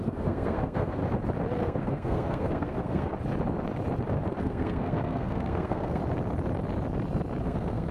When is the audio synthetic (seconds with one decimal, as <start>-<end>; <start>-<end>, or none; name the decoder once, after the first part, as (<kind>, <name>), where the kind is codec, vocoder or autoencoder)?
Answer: 0.0-1.0 (codec, SNAC); 1.6-3.1; 4.4-6.0; 7.4-7.9